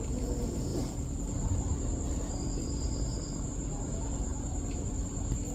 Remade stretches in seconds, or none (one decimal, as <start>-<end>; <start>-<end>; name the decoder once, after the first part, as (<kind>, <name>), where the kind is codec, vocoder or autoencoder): 4.3-5.5 (vocoder, BigVGAN v2)